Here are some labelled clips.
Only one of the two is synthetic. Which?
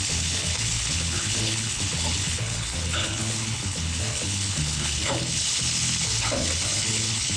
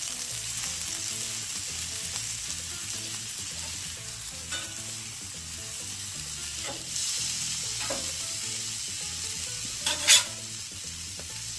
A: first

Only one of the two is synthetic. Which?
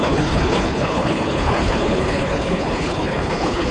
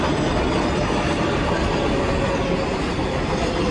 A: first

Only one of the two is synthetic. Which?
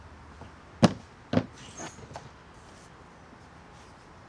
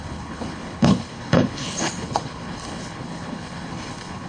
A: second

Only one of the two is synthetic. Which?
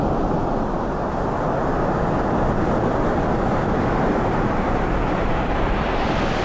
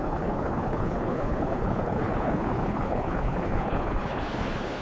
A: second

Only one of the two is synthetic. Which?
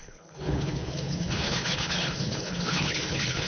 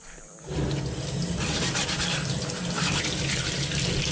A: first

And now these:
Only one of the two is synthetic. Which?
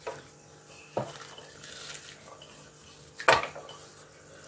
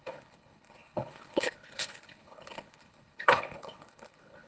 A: second